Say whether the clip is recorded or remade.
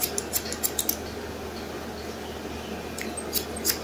recorded